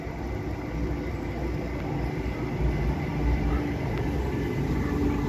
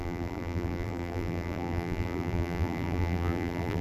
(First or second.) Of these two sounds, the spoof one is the second